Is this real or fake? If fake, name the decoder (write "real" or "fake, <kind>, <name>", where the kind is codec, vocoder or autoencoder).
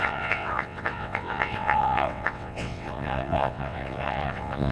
fake, vocoder, WaveNeXt